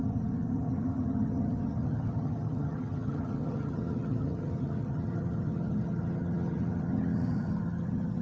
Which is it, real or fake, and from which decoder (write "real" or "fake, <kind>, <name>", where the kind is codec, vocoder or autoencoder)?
fake, vocoder, HiFi-GAN